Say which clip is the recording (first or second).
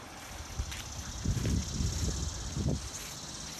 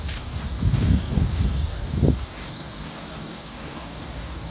first